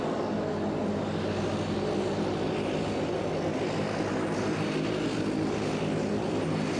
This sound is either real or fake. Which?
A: real